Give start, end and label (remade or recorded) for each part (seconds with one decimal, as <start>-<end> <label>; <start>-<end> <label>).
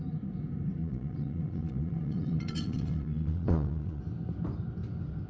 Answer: 0.0-0.8 recorded; 0.8-4.0 remade; 4.0-5.3 recorded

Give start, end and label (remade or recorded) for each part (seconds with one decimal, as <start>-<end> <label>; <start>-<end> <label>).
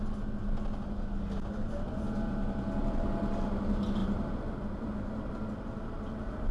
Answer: 0.0-4.0 recorded; 4.0-6.5 remade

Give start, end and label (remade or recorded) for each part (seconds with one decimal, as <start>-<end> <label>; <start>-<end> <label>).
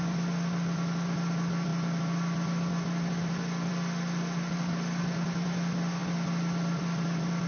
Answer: 0.0-7.5 recorded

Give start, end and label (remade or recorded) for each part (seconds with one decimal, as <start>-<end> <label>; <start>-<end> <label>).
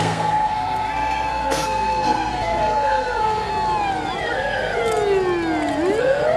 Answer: 0.0-3.5 remade; 3.5-4.2 recorded; 4.2-4.8 remade; 4.8-6.0 recorded; 6.0-6.4 remade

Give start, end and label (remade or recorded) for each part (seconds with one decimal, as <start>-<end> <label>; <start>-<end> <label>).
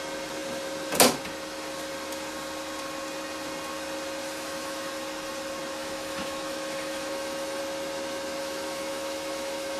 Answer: 0.0-4.2 recorded; 4.2-5.0 remade; 5.0-5.8 recorded; 5.8-7.6 remade; 7.6-8.4 recorded; 8.4-9.8 remade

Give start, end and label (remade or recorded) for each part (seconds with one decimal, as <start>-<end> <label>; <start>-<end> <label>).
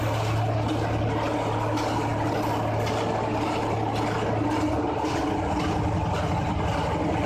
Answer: 0.0-7.3 recorded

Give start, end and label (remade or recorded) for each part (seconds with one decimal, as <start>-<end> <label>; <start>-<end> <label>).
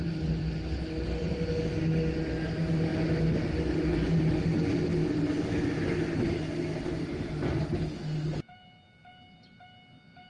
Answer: 0.0-6.7 recorded; 6.7-7.7 remade; 7.7-10.3 recorded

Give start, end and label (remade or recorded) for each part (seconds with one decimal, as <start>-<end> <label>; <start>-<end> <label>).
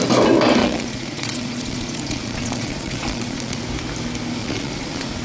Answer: 0.0-0.6 recorded; 0.6-3.6 remade; 3.6-4.4 recorded; 4.4-5.2 remade